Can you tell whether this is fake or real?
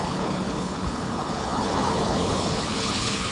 fake